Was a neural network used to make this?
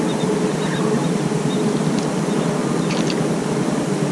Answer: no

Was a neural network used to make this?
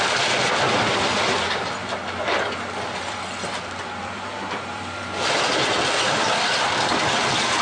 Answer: yes